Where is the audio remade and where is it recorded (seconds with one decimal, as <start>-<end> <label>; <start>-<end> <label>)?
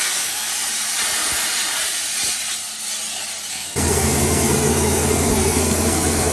0.0-0.5 remade; 0.5-3.5 recorded; 3.5-6.3 remade